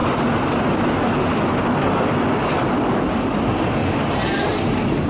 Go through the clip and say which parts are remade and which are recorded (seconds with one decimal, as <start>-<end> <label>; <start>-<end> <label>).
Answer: 0.0-5.1 recorded